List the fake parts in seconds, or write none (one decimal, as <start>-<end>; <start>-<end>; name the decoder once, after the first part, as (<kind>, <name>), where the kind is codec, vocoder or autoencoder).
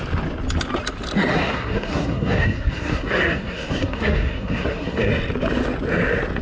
1.3-5.1 (codec, SNAC)